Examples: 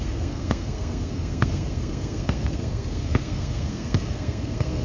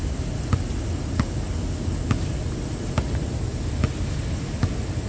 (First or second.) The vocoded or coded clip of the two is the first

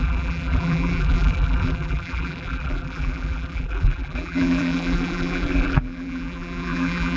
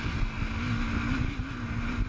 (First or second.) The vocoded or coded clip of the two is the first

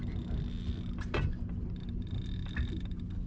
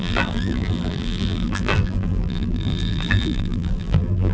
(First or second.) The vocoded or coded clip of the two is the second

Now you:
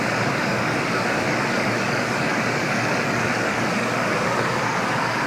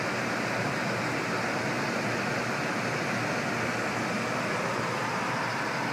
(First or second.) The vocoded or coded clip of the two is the first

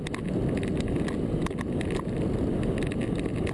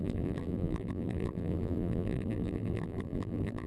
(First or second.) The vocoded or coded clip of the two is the second